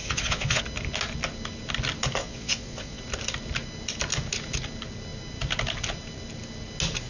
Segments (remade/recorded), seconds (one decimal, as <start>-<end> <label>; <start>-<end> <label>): 0.0-0.6 remade; 0.6-2.2 recorded; 2.2-3.0 remade; 3.0-7.1 recorded